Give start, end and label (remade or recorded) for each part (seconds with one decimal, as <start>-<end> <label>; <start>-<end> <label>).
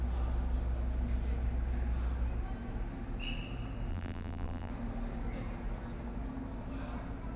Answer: 0.0-3.9 recorded; 3.9-4.7 remade; 4.7-7.4 recorded